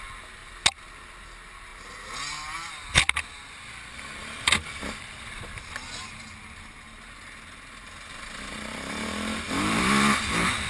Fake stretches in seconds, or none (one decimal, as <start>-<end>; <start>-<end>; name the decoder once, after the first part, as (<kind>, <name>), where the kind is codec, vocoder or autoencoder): none